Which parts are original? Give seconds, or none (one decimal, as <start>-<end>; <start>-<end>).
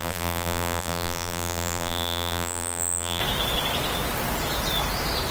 3.2-5.3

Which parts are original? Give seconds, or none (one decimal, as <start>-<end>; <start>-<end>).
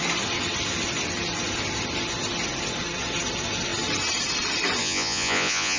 0.0-4.8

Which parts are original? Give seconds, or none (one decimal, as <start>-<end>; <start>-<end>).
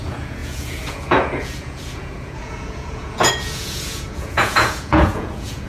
none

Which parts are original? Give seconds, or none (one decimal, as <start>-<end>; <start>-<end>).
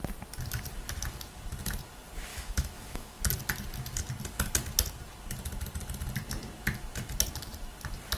0.0-2.3; 3.2-8.2